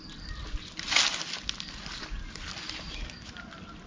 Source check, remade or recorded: recorded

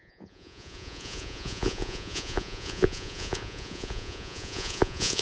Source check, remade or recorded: remade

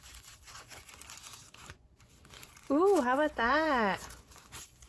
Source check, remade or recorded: remade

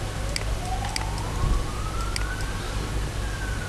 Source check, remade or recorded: recorded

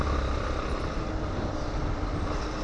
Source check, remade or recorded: recorded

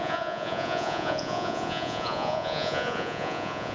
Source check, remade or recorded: remade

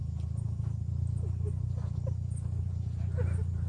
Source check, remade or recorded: recorded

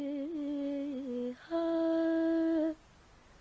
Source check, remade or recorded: recorded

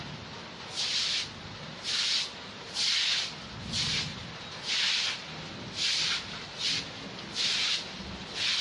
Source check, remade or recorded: recorded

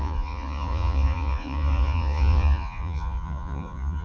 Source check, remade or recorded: remade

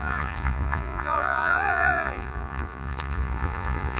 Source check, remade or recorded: remade